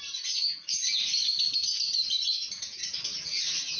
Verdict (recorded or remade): recorded